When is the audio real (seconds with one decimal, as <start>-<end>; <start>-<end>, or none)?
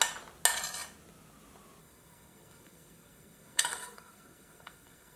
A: 0.0-1.8